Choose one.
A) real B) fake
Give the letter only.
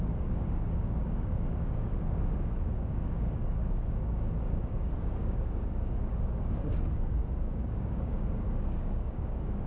B